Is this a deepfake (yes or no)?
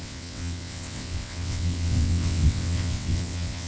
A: yes